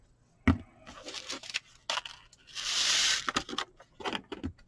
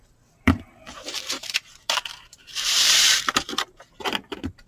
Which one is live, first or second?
first